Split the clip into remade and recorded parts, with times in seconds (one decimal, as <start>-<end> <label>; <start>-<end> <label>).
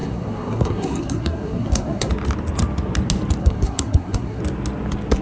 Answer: 0.0-2.1 remade; 2.1-3.4 recorded; 3.4-4.4 remade; 4.4-5.2 recorded